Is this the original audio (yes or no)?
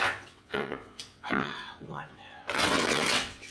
no